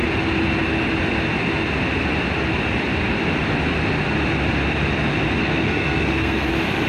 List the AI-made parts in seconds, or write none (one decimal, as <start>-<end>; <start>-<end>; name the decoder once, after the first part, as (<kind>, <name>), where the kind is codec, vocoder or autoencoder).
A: 5.4-6.5 (codec, SNAC)